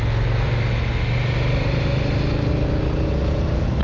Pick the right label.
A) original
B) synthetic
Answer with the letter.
A